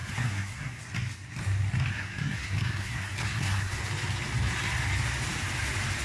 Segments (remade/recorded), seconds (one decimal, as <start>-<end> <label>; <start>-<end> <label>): 0.0-0.8 remade; 0.8-1.9 recorded; 1.9-3.8 remade; 3.8-6.0 recorded